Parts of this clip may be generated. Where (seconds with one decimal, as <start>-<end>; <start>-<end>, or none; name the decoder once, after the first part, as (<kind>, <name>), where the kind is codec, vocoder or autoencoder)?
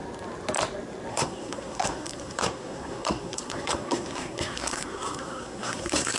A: 1.1-6.2 (codec, SNAC)